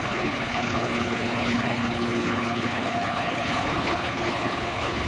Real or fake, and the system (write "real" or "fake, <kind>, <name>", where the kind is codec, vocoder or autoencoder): fake, codec, HILCodec